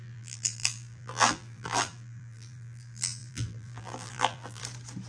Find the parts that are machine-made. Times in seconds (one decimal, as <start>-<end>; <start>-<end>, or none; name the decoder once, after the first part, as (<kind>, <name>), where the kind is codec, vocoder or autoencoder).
0.0-4.6 (vocoder, BigVGAN v2)